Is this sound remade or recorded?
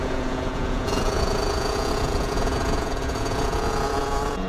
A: remade